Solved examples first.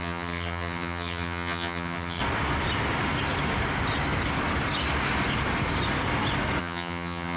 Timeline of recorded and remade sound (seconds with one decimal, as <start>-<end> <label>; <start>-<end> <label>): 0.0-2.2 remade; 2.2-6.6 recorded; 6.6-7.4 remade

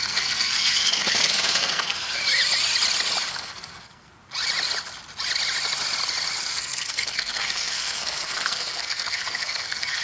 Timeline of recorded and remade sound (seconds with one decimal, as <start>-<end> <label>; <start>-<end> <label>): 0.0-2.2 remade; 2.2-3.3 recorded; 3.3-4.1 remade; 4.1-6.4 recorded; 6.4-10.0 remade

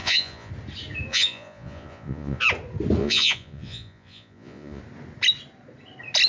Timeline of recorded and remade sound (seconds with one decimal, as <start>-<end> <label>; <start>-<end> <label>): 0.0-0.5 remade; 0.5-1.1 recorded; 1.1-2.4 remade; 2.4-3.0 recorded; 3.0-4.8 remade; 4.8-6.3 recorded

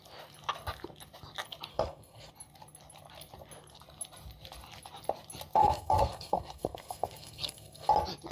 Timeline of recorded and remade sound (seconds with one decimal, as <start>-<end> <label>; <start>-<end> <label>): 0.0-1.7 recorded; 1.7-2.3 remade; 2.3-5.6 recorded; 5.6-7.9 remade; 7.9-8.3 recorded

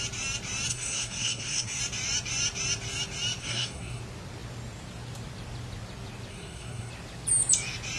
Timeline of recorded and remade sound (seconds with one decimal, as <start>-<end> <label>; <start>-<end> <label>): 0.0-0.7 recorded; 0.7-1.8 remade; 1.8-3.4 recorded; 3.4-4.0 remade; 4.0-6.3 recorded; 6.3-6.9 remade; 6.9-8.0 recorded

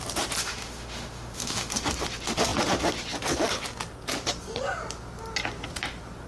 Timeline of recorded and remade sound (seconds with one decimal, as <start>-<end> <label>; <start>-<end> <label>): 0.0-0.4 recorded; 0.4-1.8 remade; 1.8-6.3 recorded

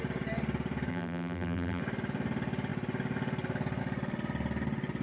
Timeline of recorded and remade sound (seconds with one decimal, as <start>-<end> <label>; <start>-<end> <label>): 0.0-0.9 recorded; 0.9-1.8 remade; 1.8-5.0 recorded